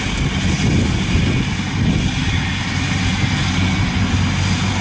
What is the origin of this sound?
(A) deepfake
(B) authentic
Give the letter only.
B